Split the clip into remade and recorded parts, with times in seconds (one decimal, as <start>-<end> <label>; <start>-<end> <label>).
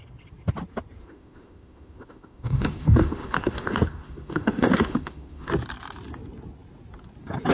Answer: 0.0-1.0 recorded; 1.0-5.5 remade; 5.5-7.5 recorded